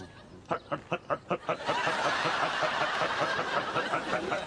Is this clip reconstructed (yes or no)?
yes